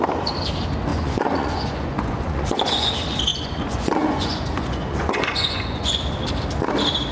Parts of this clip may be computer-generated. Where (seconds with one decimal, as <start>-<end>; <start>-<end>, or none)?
0.9-2.9; 3.3-6.0